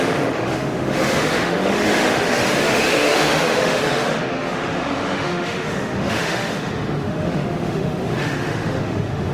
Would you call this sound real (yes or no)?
no